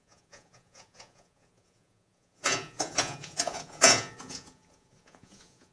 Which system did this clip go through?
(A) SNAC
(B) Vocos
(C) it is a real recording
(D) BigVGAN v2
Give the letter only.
B